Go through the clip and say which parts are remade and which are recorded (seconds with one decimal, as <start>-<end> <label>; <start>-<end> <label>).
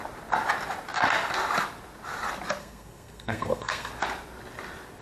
0.0-2.6 recorded; 2.6-3.9 remade; 3.9-5.0 recorded